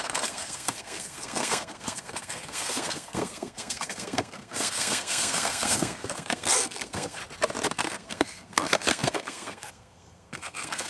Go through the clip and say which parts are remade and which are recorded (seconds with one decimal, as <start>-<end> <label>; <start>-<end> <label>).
0.0-7.2 remade; 7.2-7.7 recorded; 7.7-10.9 remade